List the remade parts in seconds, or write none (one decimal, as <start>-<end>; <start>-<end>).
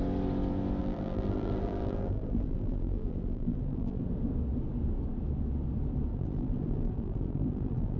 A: 0.8-4.0; 6.1-8.0